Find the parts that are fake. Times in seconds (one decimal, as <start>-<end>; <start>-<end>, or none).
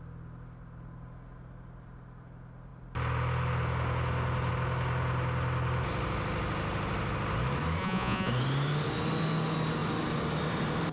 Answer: 7.8-8.3